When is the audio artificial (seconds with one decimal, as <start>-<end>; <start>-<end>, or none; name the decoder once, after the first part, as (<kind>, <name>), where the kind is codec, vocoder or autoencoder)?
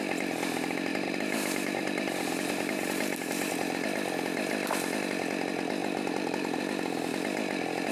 0.9-3.5 (vocoder, BigVGAN v2); 5.8-6.6